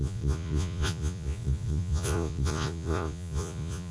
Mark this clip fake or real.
fake